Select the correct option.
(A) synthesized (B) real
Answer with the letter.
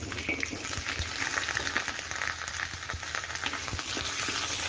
B